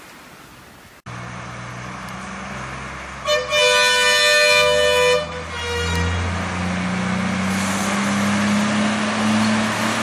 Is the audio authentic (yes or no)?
yes